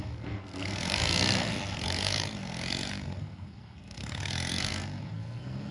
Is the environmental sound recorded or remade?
remade